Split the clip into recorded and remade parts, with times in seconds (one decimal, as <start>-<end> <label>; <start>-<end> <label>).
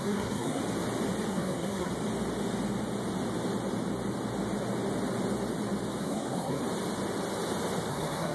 0.0-0.6 remade; 0.6-1.3 recorded; 1.3-1.9 remade; 1.9-6.0 recorded; 6.0-6.6 remade; 6.6-7.9 recorded; 7.9-8.3 remade